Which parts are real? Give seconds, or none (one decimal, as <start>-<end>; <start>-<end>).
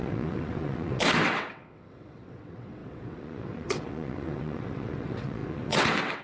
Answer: none